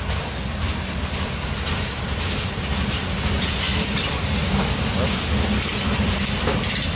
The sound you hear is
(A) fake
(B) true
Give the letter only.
B